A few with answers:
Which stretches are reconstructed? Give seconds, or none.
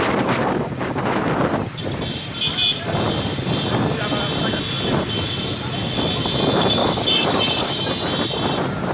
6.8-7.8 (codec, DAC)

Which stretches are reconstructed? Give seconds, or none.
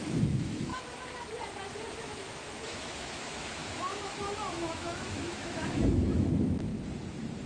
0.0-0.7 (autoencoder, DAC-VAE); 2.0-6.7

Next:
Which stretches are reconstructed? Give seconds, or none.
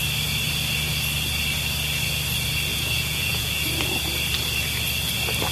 2.7-3.5 (vocoder, Vocos)